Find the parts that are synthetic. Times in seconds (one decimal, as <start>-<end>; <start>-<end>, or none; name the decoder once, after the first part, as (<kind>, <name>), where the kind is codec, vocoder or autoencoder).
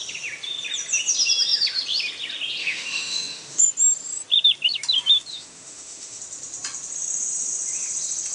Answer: 2.6-3.6 (autoencoder, DAC-VAE); 5.3-6.2